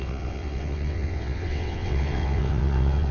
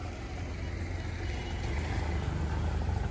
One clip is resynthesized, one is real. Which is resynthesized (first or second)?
first